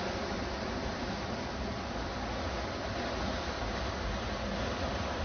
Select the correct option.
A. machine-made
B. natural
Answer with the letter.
B